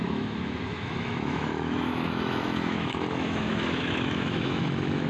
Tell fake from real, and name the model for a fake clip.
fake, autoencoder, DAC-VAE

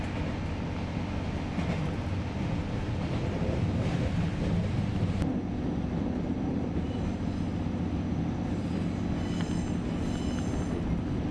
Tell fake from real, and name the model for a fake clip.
real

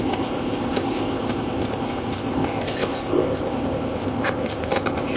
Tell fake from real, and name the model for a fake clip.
fake, codec, ZipCodec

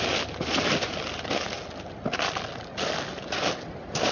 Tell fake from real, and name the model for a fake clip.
real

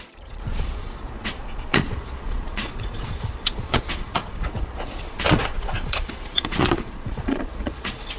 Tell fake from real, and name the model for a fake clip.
fake, vocoder, Vocos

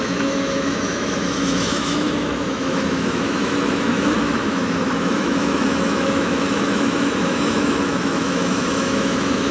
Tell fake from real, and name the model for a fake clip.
fake, autoencoder, DAC-VAE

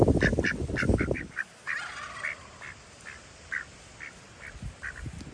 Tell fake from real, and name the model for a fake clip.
real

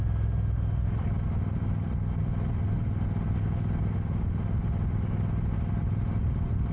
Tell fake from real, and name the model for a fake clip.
real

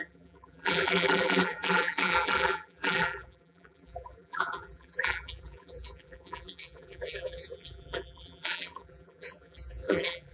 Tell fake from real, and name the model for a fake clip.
fake, vocoder, BigVGAN v2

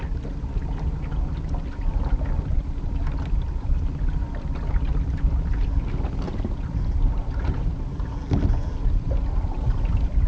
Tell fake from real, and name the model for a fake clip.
real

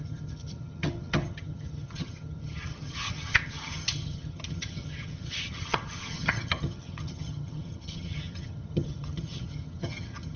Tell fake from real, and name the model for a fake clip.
fake, vocoder, HiFi-GAN